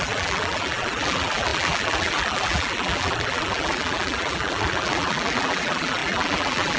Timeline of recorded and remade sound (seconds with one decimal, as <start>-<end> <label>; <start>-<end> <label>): 0.0-6.8 remade